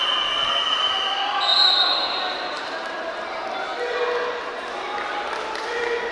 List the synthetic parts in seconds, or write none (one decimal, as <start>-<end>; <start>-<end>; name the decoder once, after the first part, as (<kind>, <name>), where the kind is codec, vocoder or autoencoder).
1.5-2.6 (vocoder, BigVGAN v2)